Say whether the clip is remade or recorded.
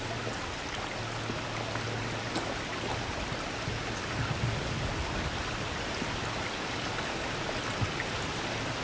recorded